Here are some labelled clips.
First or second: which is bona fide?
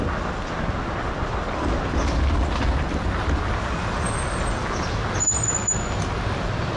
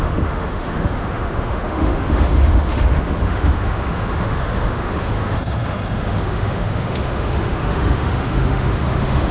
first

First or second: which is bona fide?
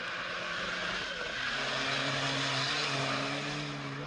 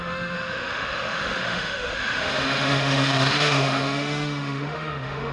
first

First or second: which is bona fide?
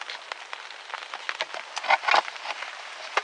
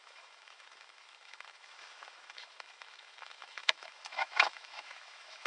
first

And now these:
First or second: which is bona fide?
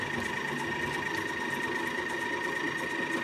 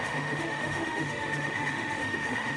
first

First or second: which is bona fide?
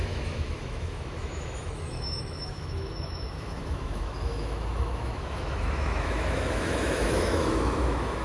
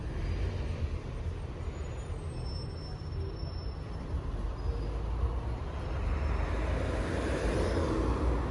second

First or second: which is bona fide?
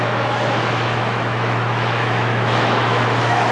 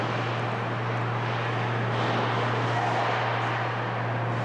second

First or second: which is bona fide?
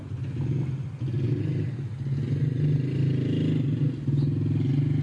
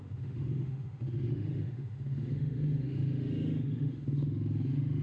first